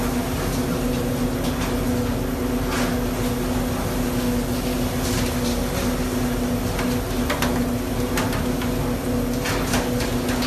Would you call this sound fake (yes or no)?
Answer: no